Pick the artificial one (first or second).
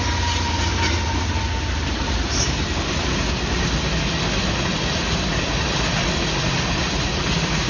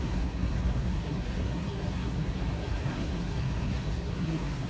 second